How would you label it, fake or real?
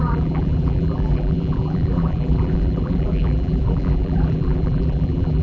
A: fake